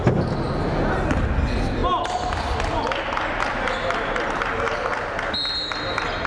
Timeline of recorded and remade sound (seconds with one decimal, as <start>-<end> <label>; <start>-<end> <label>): 0.0-6.3 recorded